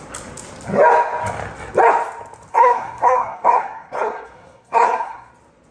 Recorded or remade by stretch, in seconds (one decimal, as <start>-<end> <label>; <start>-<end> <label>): 0.0-2.5 recorded; 2.5-5.3 remade; 5.3-5.7 recorded